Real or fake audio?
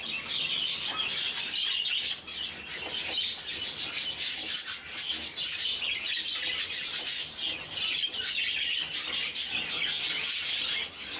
real